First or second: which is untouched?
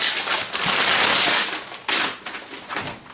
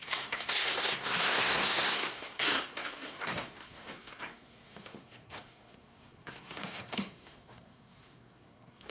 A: first